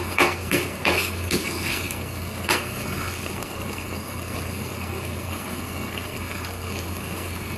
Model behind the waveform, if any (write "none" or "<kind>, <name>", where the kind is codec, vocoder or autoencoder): codec, SNAC